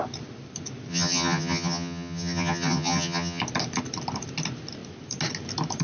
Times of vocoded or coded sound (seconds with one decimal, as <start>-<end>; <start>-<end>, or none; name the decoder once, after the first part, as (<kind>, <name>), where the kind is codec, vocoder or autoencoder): 0.9-3.4 (vocoder, HiFi-GAN)